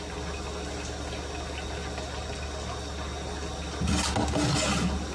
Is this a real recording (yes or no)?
yes